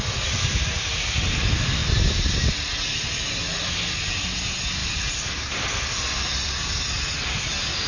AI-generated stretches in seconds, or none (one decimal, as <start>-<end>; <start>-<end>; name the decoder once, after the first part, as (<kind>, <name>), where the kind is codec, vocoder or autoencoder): 1.8-2.7 (vocoder, BigVGAN v2); 4.8-6.0